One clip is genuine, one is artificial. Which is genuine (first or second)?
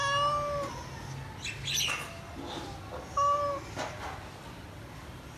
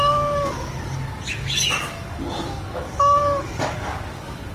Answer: first